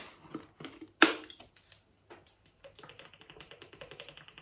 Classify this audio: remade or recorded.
recorded